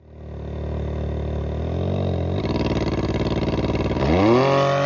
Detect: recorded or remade recorded